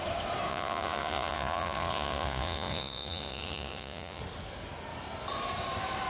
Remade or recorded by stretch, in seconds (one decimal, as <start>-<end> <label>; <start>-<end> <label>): 0.0-0.5 recorded; 0.5-4.2 remade; 4.2-6.1 recorded